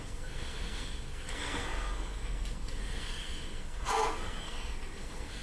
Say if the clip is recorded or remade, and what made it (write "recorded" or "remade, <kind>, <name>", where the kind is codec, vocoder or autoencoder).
remade, codec, SNAC